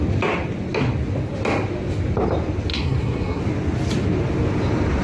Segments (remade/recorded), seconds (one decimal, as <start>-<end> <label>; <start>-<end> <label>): 0.0-2.7 recorded; 2.7-3.4 remade; 3.4-5.0 recorded